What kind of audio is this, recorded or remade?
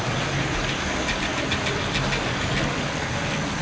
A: recorded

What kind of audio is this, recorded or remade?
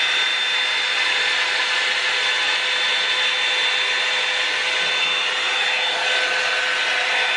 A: recorded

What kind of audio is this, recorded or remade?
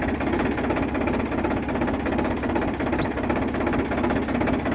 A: recorded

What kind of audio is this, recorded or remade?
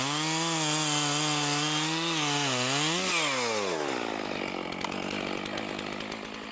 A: recorded